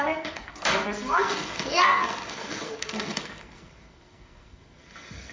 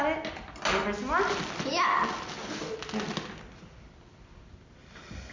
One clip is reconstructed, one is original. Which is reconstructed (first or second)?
first